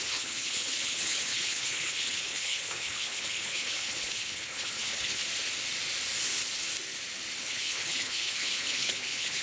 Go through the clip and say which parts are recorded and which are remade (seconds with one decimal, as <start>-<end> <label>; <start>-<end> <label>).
0.0-5.2 remade; 5.2-7.4 recorded; 7.4-9.4 remade